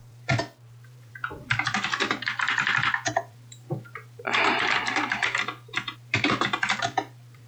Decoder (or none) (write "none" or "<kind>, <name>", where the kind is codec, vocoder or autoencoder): vocoder, BigVGAN v2